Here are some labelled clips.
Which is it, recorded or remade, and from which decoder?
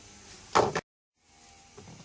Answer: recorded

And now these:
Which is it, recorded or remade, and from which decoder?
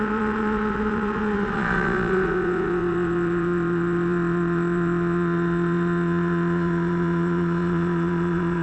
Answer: remade, vocoder, Vocos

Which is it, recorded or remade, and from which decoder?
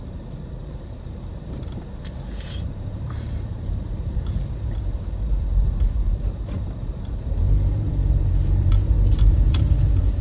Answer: remade, vocoder, BigVGAN v2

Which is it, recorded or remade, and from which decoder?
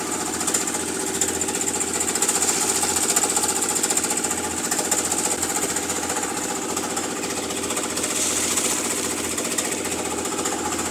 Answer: recorded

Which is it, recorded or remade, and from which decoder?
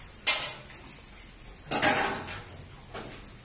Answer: recorded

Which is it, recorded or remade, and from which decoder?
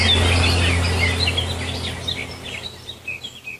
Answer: recorded